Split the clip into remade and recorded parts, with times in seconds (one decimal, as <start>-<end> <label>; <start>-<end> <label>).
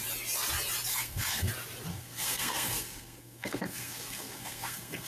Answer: 0.0-0.9 recorded; 0.9-1.5 remade; 1.5-1.9 recorded; 1.9-5.1 remade